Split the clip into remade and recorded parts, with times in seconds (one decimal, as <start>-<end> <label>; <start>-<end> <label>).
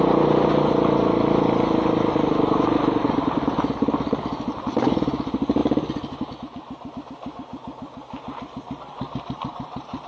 0.0-10.1 recorded